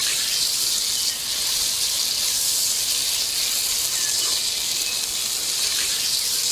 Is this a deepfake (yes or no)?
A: no